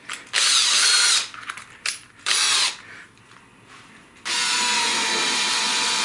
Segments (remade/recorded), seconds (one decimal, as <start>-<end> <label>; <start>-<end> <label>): 0.0-0.6 recorded; 0.6-2.7 remade; 2.7-6.0 recorded